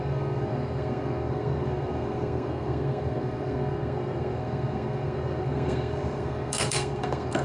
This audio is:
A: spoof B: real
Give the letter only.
A